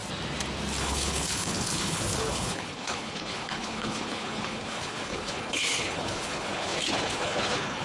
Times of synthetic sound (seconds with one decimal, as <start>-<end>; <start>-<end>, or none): 0.8-7.8